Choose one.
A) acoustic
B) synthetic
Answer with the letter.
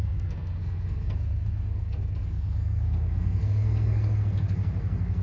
B